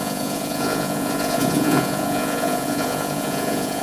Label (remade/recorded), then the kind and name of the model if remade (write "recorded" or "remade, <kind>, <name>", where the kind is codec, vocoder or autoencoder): remade, vocoder, Vocos